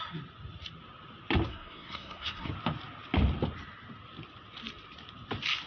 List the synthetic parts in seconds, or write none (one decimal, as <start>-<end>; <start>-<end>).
1.5-2.5